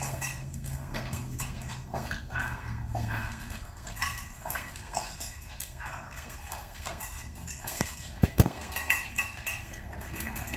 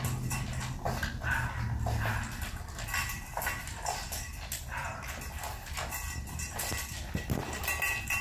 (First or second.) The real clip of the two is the second